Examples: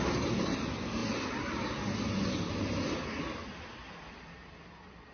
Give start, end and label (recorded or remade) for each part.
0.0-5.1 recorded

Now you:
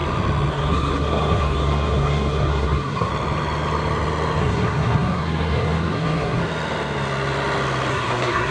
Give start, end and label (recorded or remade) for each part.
0.0-0.5 recorded; 0.5-3.1 remade; 3.1-4.4 recorded; 4.4-6.4 remade; 6.4-7.9 recorded; 7.9-8.5 remade

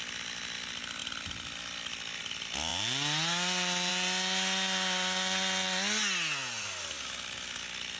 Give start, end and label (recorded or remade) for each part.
0.0-8.0 recorded

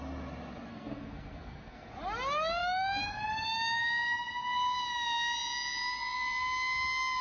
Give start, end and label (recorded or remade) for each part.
0.0-0.7 recorded; 0.7-1.9 remade; 1.9-7.2 recorded